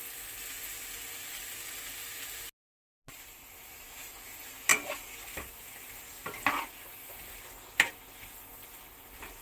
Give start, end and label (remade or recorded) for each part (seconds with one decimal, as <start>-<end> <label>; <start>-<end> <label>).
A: 0.0-1.9 remade; 1.9-4.7 recorded; 4.7-6.7 remade; 6.7-9.4 recorded